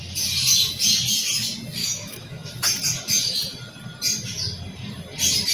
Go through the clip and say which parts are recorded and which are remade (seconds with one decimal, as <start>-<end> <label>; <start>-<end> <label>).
0.0-1.8 recorded; 1.8-2.5 remade; 2.5-5.5 recorded